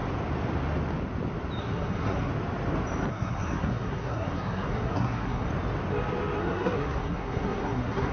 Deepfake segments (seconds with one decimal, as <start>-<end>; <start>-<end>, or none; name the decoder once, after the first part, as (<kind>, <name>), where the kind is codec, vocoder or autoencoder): 1.6-2.3 (codec, SNAC); 3.1-5.5; 6.4-8.1